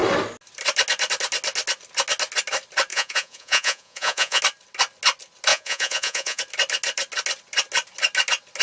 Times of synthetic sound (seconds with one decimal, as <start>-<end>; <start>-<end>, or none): 2.9-4.4; 5.5-6.4